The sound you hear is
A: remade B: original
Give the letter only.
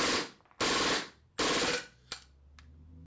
B